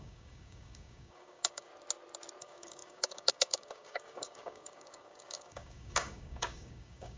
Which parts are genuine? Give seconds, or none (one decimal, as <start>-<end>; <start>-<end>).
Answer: 1.7-2.4